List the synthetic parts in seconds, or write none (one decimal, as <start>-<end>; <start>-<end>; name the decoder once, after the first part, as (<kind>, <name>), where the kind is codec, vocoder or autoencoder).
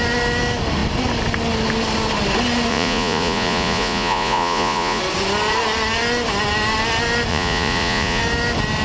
2.7-5.0 (vocoder, Vocos); 7.3-8.2